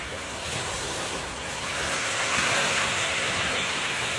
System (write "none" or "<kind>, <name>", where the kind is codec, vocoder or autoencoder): codec, SNAC